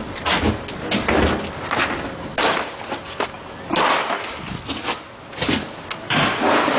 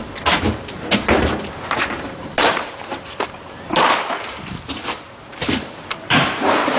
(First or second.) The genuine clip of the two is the first